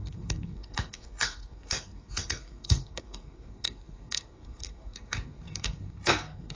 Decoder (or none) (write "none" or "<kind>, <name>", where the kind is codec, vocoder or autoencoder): codec, SNAC